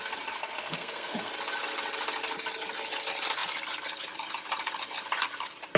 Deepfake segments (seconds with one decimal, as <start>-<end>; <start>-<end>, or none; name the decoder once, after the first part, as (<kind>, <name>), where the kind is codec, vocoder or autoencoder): 0.4-1.3 (codec, SNAC)